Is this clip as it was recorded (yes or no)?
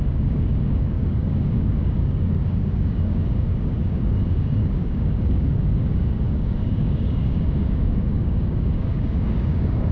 no